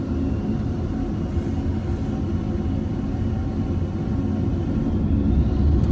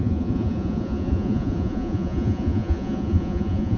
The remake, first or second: second